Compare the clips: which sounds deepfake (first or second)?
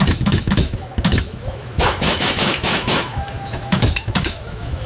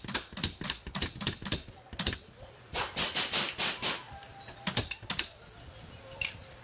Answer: first